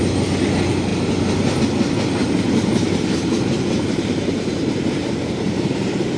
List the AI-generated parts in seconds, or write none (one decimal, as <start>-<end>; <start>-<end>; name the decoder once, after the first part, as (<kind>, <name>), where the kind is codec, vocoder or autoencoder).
2.2-6.2 (vocoder, BigVGAN v2)